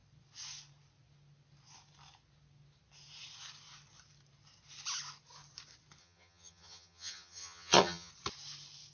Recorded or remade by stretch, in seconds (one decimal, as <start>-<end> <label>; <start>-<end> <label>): 0.0-6.0 recorded; 6.0-8.1 remade; 8.1-8.9 recorded